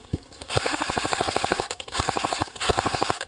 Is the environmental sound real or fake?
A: fake